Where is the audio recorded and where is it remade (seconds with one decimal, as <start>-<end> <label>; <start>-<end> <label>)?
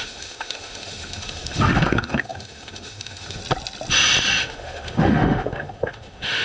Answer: 0.0-3.4 remade; 3.4-4.4 recorded; 4.4-6.4 remade